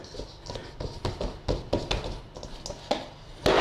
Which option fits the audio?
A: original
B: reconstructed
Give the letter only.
A